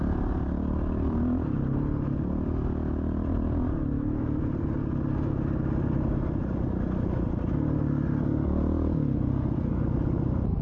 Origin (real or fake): real